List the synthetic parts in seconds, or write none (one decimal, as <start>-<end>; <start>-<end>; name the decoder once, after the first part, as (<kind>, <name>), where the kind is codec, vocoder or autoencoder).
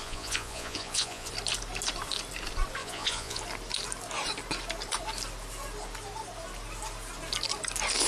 0.0-1.3 (vocoder, Vocos); 2.8-3.4